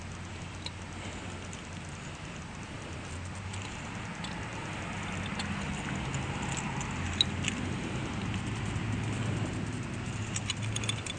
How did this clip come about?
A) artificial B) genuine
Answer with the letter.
B